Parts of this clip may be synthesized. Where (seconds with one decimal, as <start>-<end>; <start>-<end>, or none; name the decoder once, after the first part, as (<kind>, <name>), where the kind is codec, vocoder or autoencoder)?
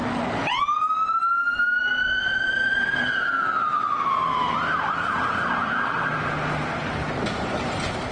2.7-5.7 (vocoder, BigVGAN v2)